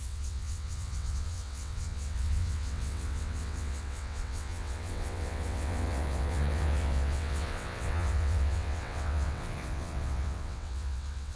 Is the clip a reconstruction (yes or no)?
yes